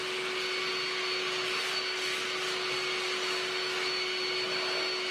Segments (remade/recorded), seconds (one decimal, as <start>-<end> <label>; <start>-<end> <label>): 0.0-5.1 recorded